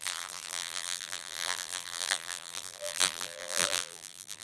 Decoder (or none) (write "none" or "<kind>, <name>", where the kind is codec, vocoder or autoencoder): vocoder, BigVGAN v2